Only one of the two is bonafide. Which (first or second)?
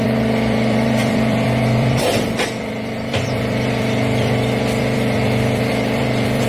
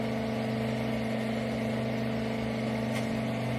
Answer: second